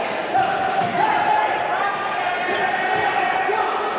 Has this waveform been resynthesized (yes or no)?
no